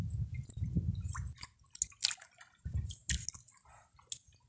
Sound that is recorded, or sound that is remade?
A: recorded